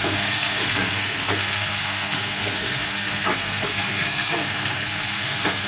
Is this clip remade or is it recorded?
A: remade